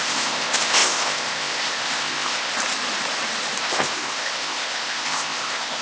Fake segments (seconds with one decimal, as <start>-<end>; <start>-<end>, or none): 0.0-2.5; 3.6-5.8